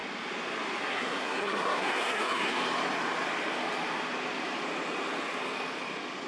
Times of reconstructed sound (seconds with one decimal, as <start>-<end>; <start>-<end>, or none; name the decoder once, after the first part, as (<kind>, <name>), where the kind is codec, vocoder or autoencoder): 0.8-2.6 (codec, SNAC)